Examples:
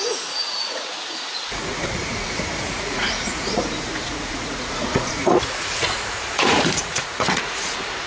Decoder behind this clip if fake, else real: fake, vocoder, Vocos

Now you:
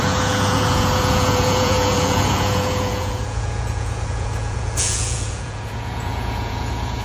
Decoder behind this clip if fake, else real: fake, vocoder, Vocos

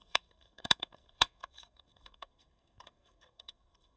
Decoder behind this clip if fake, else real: fake, codec, SNAC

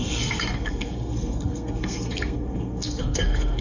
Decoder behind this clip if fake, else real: fake, codec, SNAC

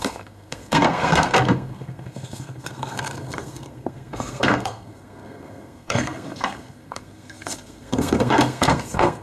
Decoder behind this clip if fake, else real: fake, codec, SNAC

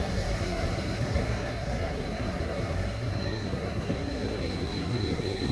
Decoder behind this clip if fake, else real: fake, codec, SNAC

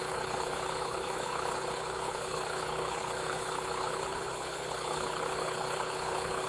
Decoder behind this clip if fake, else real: fake, codec, HILCodec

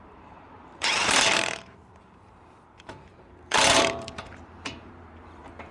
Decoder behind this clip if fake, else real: fake, vocoder, BigVGAN v2